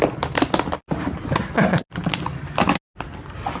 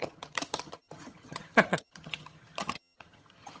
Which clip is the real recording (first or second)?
first